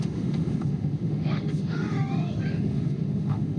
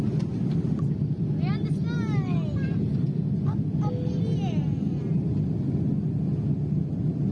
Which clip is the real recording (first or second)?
second